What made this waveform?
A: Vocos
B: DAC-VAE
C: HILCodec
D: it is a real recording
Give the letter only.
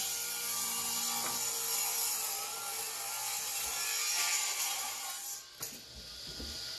D